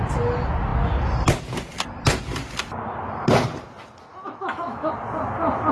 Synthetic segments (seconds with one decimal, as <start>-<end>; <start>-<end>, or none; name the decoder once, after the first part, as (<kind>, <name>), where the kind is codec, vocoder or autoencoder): 4.1-4.9 (autoencoder, DAC-VAE)